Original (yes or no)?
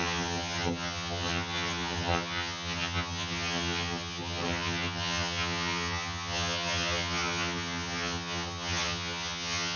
no